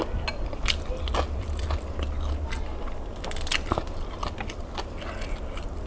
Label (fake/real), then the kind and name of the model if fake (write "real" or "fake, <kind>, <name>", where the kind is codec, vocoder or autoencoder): real